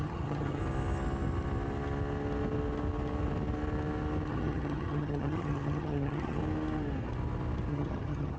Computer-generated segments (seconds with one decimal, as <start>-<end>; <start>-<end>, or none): 0.0-0.6; 4.3-6.4; 7.7-8.4

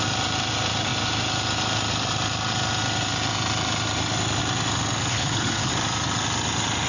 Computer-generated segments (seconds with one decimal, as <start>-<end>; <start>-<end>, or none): 5.1-5.7

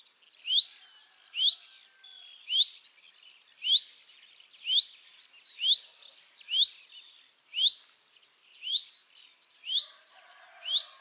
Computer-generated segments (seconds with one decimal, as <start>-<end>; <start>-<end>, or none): none

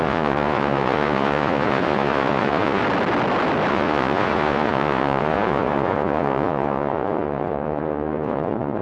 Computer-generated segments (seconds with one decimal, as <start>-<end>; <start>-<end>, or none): 0.0-2.8; 3.7-8.8

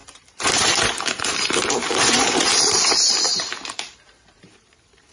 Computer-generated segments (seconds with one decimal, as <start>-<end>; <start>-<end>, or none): 0.0-5.1

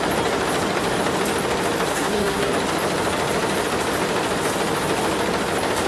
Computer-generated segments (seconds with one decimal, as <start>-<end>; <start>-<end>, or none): 1.9-2.5

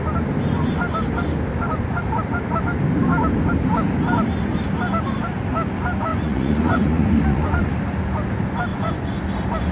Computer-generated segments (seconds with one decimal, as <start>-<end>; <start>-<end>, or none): 6.1-7.7; 8.7-9.2

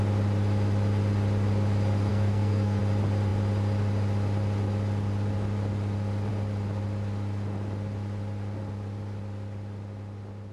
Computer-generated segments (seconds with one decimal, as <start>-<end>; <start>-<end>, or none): 2.1-2.8